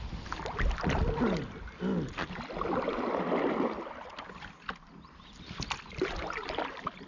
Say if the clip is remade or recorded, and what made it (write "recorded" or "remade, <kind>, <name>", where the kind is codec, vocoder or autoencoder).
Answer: recorded